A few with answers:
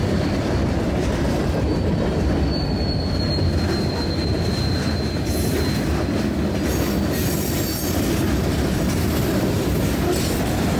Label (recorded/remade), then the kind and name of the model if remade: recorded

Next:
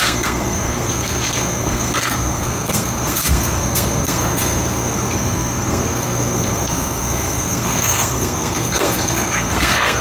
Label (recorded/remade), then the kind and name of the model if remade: remade, codec, SNAC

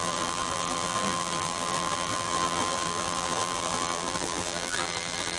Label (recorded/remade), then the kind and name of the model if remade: remade, vocoder, BigVGAN v2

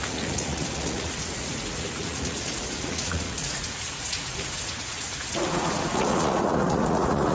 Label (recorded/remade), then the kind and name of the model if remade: remade, vocoder, Vocos